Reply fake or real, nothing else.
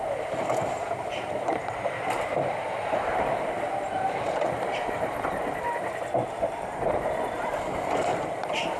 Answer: fake